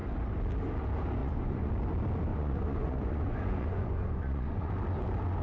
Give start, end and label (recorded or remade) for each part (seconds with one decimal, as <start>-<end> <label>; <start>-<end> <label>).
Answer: 0.0-1.2 recorded; 1.2-1.7 remade; 1.7-2.3 recorded; 2.3-4.7 remade; 4.7-5.4 recorded